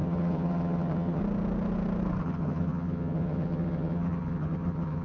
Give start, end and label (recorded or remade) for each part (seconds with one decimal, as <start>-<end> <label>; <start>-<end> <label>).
0.0-1.2 remade; 1.2-2.2 recorded; 2.2-5.0 remade